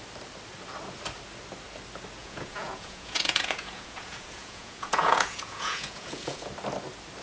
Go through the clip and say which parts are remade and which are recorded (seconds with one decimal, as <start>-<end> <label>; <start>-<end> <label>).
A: 0.0-2.2 recorded; 2.2-6.5 remade; 6.5-7.2 recorded